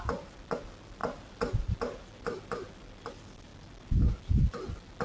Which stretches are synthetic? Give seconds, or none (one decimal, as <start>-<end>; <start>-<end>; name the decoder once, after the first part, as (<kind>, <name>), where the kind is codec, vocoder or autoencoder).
none